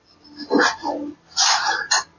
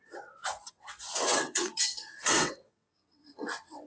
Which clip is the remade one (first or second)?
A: second